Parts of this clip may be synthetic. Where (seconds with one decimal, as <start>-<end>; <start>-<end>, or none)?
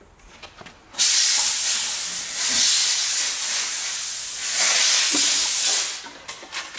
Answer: 0.8-1.4